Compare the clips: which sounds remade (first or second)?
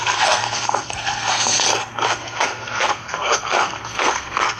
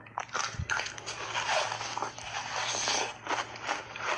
first